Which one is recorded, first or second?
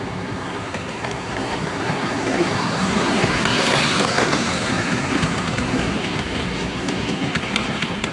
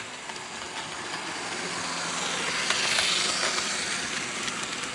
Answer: second